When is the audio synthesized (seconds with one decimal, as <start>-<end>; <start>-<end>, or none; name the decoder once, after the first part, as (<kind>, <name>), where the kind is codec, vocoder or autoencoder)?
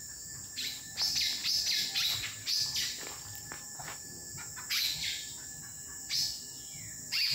none